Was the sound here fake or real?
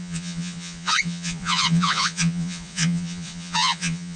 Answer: fake